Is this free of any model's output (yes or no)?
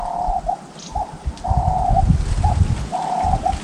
yes